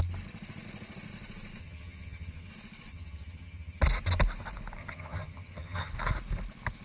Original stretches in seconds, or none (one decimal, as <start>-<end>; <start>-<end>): 0.0-1.6; 2.5-2.9; 3.8-4.8; 5.9-6.8